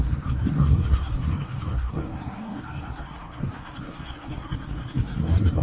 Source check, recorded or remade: remade